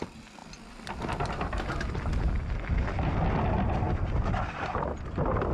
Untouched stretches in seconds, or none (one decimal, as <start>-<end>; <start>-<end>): 0.0-5.5